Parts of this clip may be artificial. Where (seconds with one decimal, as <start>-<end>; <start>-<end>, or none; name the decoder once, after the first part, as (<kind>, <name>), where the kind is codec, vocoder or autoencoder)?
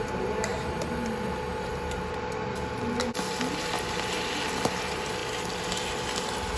none